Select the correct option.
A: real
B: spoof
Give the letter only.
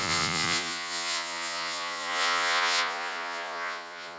B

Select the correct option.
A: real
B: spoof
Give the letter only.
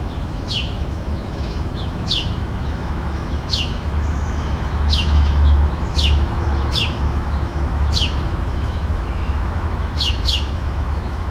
B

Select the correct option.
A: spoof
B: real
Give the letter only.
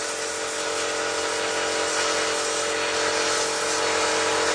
B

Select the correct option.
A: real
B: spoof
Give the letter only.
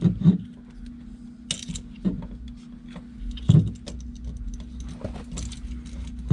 A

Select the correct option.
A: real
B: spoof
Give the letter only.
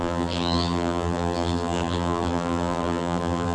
B